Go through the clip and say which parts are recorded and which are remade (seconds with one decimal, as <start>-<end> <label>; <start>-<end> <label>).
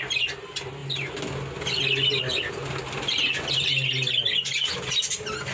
0.0-5.5 recorded